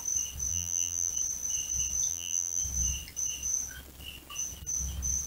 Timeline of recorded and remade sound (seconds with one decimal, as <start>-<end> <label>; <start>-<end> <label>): 0.0-0.5 recorded; 0.5-1.1 remade; 1.1-2.1 recorded; 2.1-2.6 remade; 2.6-5.3 recorded